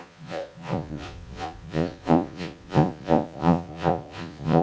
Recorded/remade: remade